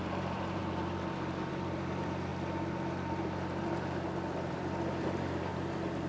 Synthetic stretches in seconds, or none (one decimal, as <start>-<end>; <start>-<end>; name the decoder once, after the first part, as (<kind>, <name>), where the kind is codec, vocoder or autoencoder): 0.0-0.6 (vocoder, BigVGAN v2); 1.5-2.3; 4.5-5.5